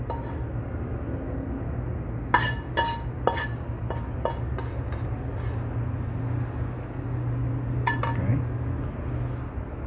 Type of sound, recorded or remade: recorded